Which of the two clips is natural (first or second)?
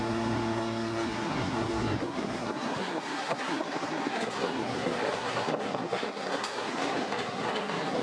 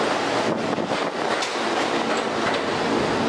second